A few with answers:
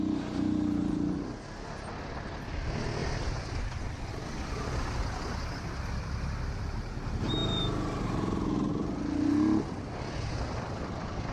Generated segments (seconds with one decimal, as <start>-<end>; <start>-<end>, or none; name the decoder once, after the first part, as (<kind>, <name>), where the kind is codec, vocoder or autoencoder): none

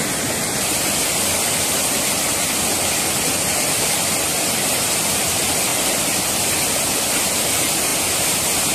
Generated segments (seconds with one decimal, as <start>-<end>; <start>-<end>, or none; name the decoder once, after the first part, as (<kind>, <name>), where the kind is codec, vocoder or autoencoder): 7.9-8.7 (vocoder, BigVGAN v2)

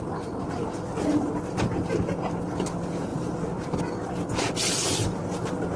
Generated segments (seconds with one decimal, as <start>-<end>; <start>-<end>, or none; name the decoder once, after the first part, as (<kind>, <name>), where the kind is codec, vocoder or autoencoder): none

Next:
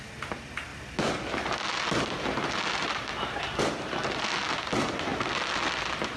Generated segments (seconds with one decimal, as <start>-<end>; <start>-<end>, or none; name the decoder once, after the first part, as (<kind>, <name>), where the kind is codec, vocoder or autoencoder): none